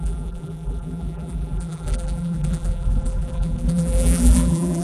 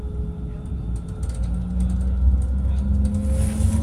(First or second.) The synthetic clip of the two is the first